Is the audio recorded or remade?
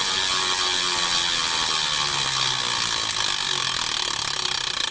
recorded